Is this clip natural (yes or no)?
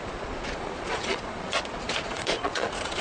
no